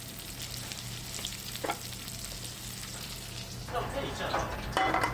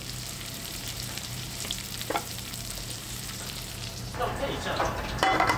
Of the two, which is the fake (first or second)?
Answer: second